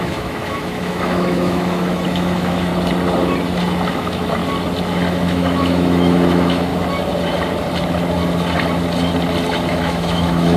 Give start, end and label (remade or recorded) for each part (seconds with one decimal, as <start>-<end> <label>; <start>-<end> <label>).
0.0-2.7 remade; 2.7-3.9 recorded; 3.9-4.4 remade; 4.4-5.1 recorded; 5.1-6.7 remade; 6.7-9.7 recorded; 9.7-10.6 remade